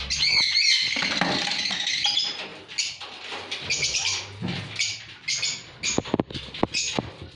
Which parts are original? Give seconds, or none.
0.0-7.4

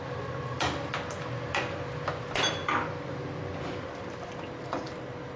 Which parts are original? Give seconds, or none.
0.0-5.4

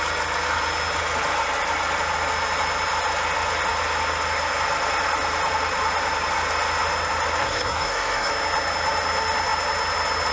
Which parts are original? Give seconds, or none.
0.0-7.4; 8.3-10.3

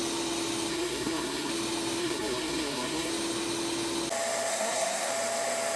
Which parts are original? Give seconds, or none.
0.0-0.7; 1.5-2.0; 3.1-4.5; 5.1-5.8

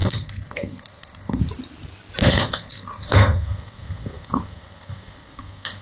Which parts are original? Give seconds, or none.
1.4-2.2

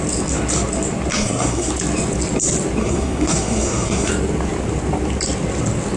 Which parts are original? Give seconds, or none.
0.0-1.1; 1.7-2.8; 4.1-6.0